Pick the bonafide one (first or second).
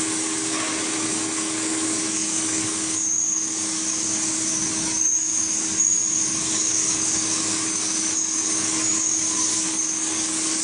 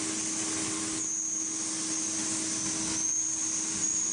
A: second